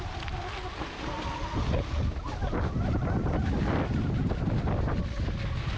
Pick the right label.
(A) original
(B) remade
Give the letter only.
A